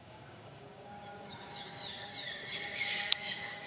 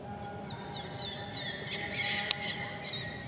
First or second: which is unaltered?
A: second